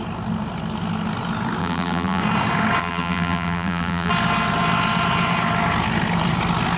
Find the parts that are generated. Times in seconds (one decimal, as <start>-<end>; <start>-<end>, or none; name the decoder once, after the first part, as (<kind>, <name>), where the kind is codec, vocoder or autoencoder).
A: 1.6-2.2 (vocoder, BigVGAN v2); 2.8-4.1